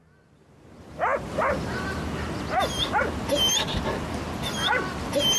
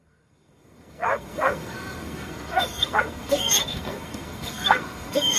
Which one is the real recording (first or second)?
first